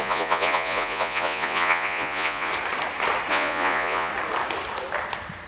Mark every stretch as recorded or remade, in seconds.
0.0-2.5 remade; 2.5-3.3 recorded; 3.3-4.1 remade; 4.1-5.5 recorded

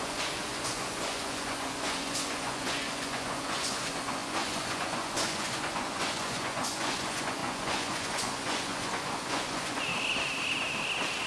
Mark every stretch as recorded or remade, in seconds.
0.0-9.9 remade; 9.9-11.3 recorded

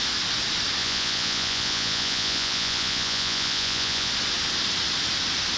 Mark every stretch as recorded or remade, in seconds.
0.0-0.8 recorded; 0.8-4.1 remade; 4.1-5.6 recorded